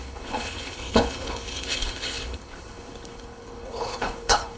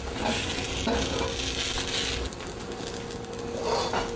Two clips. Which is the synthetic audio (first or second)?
first